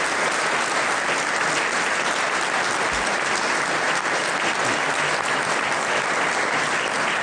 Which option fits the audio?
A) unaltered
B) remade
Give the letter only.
A